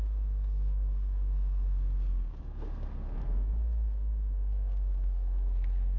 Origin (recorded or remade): remade